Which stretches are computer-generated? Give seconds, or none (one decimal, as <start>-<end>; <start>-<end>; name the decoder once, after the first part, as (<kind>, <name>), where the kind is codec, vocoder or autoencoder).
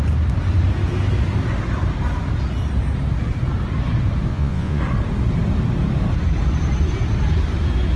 4.3-4.8 (vocoder, Vocos)